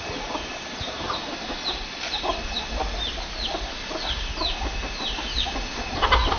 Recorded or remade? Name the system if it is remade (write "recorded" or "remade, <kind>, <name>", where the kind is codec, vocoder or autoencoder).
recorded